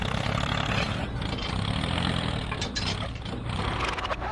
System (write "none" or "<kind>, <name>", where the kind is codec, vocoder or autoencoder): none